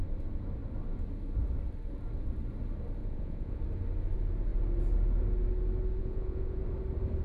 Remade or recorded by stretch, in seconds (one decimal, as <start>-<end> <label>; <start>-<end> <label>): 0.0-3.0 recorded; 3.0-3.6 remade; 3.6-6.0 recorded; 6.0-6.6 remade; 6.6-7.2 recorded

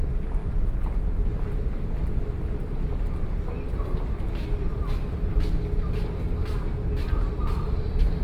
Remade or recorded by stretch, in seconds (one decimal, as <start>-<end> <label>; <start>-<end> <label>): 0.0-8.2 recorded

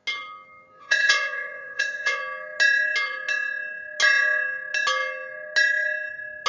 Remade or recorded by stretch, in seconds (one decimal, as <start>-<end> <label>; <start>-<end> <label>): 0.0-0.8 recorded; 0.8-2.2 remade; 2.2-6.5 recorded

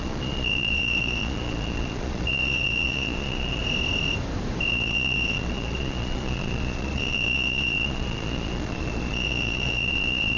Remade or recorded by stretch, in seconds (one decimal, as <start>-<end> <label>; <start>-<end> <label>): 0.0-3.6 remade; 3.6-4.7 recorded; 4.7-10.4 remade